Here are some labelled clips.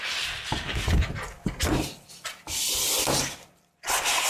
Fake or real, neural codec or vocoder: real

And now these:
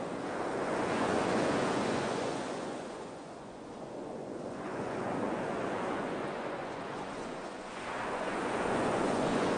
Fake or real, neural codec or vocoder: fake, vocoder, Vocos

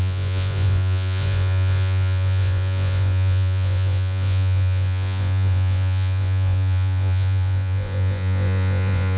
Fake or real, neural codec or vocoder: fake, vocoder, Vocos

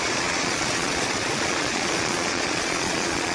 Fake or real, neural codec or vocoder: fake, vocoder, Vocos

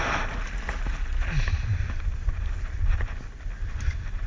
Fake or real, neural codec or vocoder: real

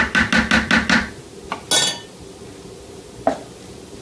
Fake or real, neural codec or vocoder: real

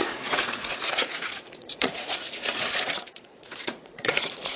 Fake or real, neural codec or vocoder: fake, vocoder, Vocos